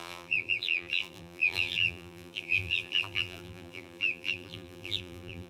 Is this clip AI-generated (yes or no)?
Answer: yes